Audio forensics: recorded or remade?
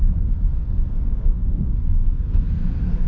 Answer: remade